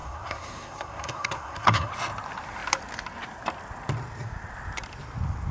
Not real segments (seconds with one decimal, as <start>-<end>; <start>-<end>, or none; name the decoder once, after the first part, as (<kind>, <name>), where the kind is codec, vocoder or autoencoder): 0.0-1.9 (codec, SNAC)